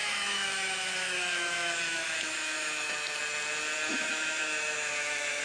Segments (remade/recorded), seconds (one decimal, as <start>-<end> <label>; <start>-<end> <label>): 0.0-3.2 remade; 3.2-3.9 recorded; 3.9-5.4 remade